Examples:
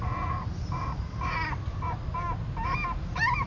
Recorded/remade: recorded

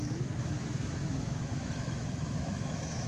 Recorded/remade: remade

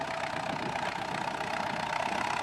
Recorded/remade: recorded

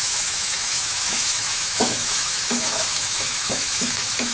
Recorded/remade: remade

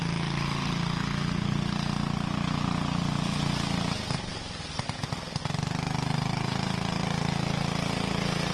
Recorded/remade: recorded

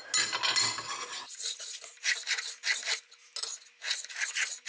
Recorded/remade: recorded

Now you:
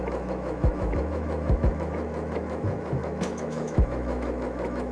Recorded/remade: remade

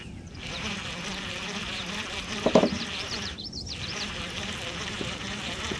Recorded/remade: remade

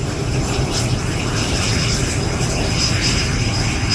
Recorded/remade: recorded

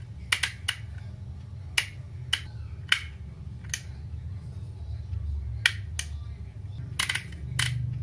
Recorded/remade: recorded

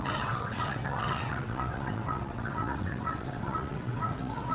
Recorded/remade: remade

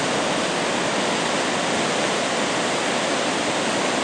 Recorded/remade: recorded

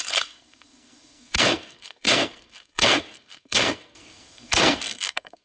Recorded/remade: remade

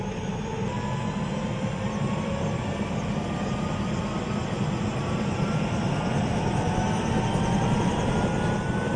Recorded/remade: recorded